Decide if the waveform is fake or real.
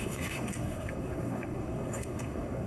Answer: fake